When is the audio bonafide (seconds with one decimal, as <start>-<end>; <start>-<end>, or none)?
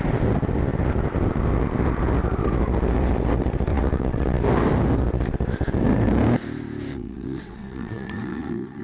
0.0-3.7; 4.4-6.9